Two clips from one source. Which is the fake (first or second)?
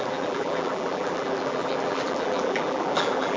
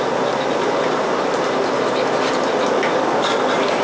first